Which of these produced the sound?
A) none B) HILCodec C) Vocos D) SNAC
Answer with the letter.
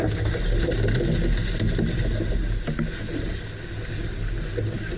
A